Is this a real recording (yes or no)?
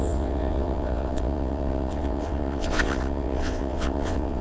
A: no